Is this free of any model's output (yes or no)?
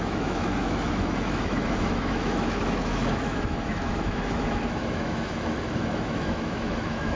no